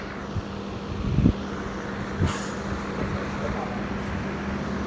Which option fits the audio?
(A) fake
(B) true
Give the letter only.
B